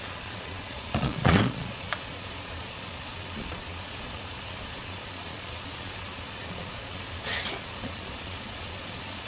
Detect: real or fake fake